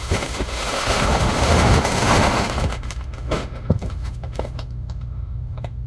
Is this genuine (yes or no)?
no